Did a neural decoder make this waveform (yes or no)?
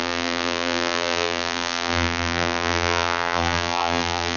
yes